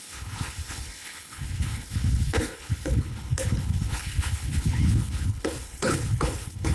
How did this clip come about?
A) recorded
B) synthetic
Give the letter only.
B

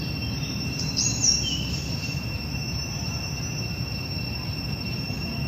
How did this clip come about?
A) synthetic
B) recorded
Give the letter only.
B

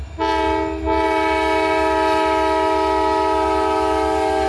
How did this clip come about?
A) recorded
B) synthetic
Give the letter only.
A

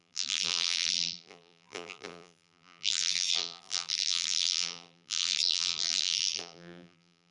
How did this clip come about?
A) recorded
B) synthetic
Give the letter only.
B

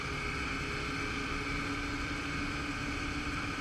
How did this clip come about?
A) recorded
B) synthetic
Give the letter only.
A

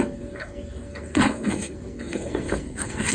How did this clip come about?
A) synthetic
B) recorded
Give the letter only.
A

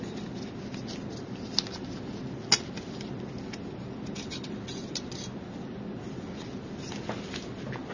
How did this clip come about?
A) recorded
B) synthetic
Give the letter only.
A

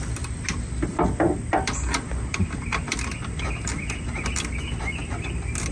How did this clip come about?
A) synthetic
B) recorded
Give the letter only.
B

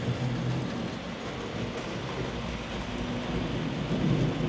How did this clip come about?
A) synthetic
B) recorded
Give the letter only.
B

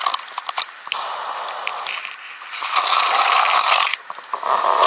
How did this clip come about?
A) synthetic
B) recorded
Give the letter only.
B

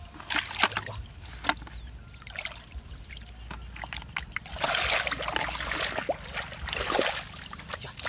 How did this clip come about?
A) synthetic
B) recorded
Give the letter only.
B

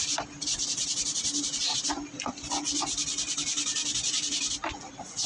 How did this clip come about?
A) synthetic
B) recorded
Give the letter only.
B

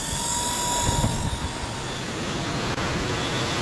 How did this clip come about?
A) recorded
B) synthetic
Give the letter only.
A